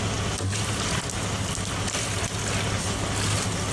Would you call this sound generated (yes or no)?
no